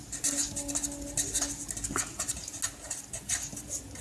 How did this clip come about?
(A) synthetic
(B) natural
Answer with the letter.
B